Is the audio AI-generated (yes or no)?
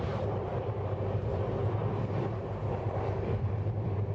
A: yes